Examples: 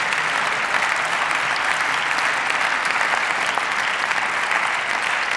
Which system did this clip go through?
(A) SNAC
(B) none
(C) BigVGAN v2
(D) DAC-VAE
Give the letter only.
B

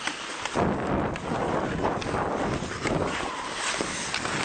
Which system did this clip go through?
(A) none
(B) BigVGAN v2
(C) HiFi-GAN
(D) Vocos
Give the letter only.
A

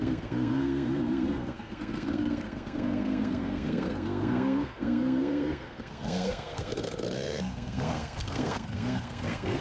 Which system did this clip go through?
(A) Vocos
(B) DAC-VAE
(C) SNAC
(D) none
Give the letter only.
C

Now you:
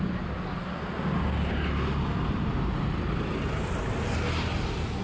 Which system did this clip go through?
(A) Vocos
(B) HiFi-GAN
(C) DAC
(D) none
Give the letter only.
D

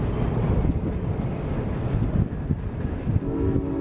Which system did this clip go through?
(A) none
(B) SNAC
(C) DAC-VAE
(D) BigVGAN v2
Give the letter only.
A